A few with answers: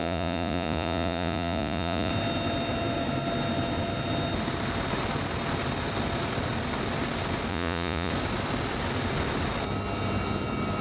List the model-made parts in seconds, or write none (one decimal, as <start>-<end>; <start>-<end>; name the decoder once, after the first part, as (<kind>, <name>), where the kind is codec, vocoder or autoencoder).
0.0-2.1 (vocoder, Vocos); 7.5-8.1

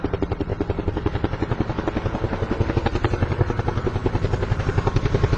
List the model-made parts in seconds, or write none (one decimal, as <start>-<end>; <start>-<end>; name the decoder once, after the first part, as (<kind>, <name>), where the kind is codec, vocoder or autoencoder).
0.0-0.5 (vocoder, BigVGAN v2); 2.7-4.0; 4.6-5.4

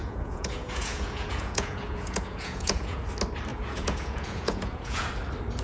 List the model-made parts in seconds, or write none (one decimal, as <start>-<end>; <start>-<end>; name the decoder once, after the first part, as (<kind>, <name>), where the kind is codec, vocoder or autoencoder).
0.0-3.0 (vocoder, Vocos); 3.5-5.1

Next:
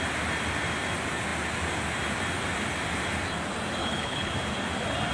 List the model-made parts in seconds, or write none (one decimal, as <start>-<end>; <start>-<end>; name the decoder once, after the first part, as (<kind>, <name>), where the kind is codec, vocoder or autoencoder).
3.8-4.3 (codec, HILCodec)

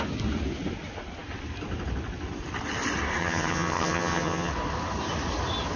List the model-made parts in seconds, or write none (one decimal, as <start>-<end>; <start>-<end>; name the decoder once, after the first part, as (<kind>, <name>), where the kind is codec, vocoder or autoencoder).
3.2-4.5 (vocoder, HiFi-GAN)

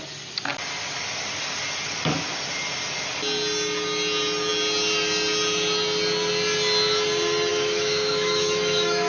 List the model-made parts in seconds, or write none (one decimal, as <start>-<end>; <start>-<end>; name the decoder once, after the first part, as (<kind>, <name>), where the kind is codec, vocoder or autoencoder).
7.5-9.1 (autoencoder, DAC-VAE)